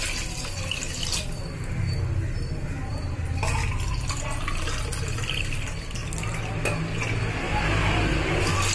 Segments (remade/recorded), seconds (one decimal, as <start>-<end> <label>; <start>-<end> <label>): 0.0-2.9 recorded; 2.9-3.5 remade; 3.5-4.9 recorded; 4.9-5.5 remade; 5.5-8.7 recorded